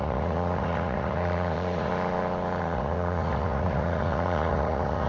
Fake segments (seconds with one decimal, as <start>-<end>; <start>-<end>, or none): 0.0-1.9; 2.6-5.1